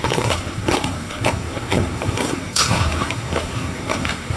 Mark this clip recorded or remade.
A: remade